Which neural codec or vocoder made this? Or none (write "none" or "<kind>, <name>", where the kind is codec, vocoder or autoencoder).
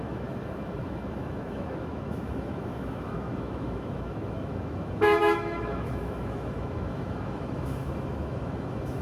autoencoder, DAC-VAE